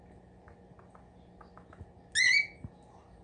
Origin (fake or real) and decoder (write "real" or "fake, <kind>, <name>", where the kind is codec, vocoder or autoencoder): real